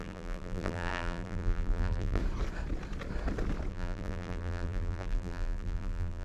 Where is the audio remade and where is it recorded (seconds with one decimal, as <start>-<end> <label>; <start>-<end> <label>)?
0.0-2.2 remade; 2.2-3.7 recorded; 3.7-6.2 remade